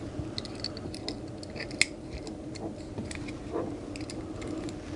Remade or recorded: recorded